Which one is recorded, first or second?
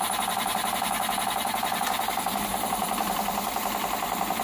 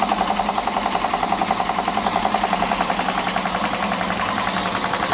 second